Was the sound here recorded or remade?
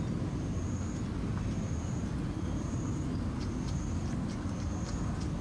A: recorded